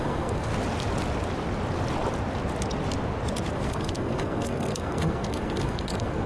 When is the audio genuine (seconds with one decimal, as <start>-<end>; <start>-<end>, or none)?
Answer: 0.5-3.5